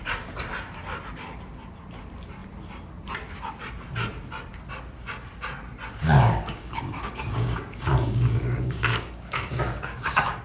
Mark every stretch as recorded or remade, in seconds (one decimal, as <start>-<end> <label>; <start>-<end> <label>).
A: 0.0-6.0 recorded; 6.0-10.4 remade